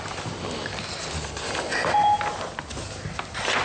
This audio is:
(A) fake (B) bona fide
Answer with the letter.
B